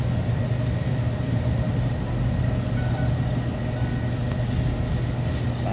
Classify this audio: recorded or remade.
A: recorded